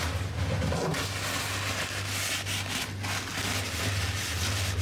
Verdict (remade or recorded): recorded